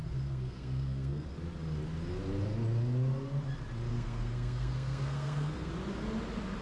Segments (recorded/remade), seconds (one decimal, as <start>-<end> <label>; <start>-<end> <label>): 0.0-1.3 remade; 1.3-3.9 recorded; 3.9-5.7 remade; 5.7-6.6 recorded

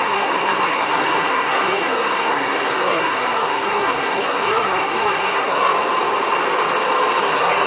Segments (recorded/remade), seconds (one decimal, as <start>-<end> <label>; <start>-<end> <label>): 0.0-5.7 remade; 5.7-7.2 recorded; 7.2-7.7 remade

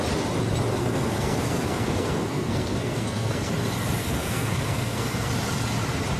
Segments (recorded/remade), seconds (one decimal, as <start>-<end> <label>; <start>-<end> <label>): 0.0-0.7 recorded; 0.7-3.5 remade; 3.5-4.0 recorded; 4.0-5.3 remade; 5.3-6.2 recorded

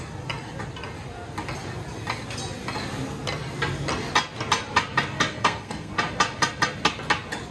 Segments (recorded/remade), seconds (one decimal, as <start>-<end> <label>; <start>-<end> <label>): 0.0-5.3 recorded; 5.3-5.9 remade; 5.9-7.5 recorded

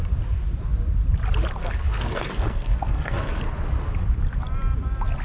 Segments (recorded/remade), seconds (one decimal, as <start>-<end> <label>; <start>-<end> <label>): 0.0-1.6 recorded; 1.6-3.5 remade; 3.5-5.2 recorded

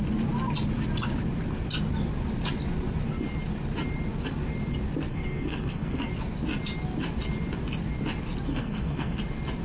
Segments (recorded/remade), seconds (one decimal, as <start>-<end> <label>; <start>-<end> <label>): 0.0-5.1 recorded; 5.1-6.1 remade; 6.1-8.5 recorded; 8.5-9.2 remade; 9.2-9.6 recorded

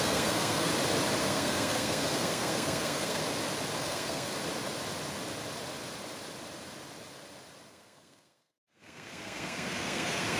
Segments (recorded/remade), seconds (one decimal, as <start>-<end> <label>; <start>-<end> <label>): 0.0-0.7 remade; 0.7-1.2 recorded; 1.2-3.2 remade; 3.2-3.8 recorded; 3.8-4.3 remade; 4.3-7.7 recorded; 7.7-10.4 remade